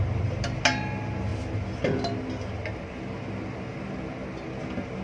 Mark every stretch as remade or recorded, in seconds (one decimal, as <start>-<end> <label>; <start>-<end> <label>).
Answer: 0.0-5.0 recorded